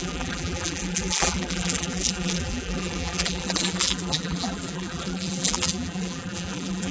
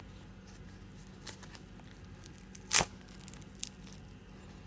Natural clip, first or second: second